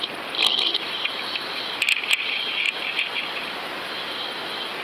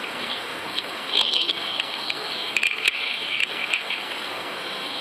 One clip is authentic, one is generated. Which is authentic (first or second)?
first